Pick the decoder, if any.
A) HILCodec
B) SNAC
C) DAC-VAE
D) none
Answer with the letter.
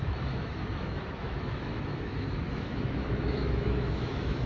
C